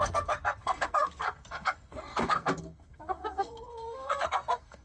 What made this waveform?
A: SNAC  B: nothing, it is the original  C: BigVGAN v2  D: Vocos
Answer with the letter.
A